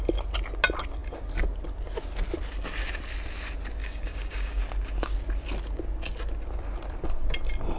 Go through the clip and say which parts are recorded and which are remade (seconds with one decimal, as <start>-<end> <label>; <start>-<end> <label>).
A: 0.0-3.8 recorded; 3.8-4.6 remade; 4.6-7.8 recorded